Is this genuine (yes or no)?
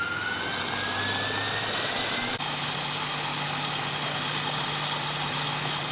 yes